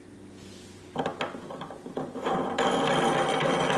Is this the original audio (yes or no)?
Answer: yes